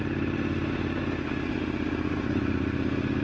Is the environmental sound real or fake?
real